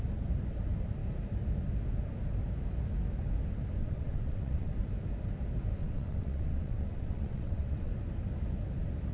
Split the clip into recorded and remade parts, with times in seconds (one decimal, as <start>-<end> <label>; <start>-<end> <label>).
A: 0.0-3.8 recorded; 3.8-4.7 remade; 4.7-5.8 recorded; 5.8-7.9 remade; 7.9-9.1 recorded